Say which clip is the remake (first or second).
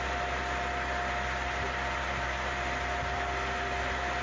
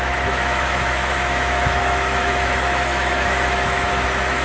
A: second